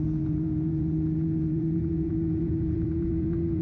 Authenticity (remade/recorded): remade